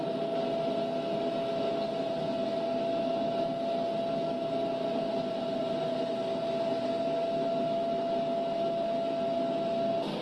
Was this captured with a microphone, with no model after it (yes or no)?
yes